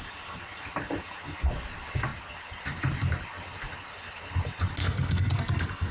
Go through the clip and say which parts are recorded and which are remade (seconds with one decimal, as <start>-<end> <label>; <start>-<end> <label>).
0.0-4.8 recorded; 4.8-5.9 remade